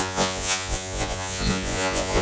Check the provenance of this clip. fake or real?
fake